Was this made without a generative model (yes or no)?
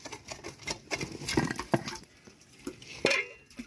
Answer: no